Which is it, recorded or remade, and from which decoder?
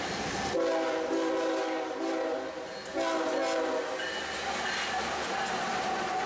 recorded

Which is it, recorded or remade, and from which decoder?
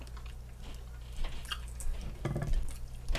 recorded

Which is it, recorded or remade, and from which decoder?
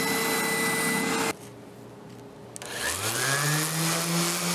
recorded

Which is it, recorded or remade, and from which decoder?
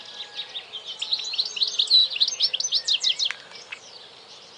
recorded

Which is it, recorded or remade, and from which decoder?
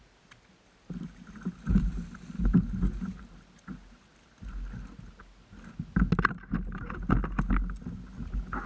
recorded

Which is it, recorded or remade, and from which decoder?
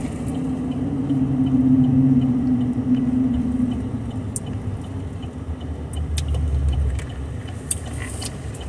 recorded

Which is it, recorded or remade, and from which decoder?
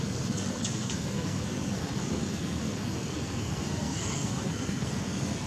remade, codec, SNAC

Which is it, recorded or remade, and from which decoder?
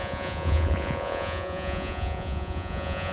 remade, vocoder, Vocos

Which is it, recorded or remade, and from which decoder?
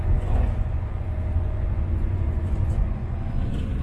remade, vocoder, Vocos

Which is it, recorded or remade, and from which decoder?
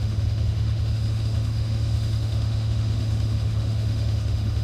remade, autoencoder, DAC-VAE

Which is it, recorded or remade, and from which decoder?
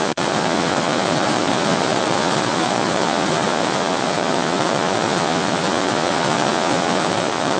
remade, vocoder, Vocos